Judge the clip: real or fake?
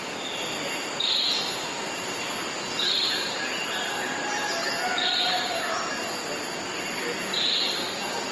real